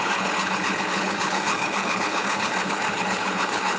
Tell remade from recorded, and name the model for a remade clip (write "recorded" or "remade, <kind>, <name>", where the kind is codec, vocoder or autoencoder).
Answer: remade, codec, HILCodec